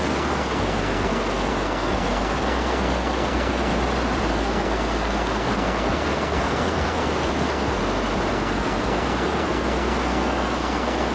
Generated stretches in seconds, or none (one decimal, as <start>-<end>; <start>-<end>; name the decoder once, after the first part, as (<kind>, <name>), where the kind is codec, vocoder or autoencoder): 0.0-3.7 (codec, SNAC); 4.3-7.8; 8.3-11.1